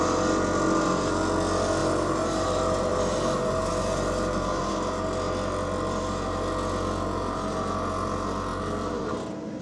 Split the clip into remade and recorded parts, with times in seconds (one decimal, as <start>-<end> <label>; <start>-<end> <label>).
0.0-1.8 recorded; 1.8-4.7 remade; 4.7-9.6 recorded